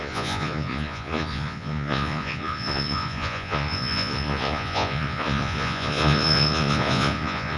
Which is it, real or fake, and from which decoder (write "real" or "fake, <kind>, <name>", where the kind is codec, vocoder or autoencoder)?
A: fake, vocoder, Vocos